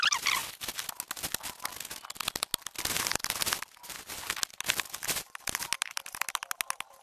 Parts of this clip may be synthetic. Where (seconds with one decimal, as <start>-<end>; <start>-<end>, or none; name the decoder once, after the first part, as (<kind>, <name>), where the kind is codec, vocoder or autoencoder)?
none